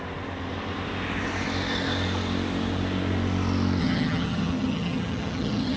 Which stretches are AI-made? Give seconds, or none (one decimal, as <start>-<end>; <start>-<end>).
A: 3.8-5.8